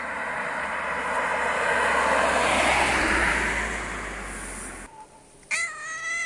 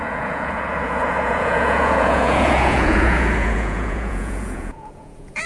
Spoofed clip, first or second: second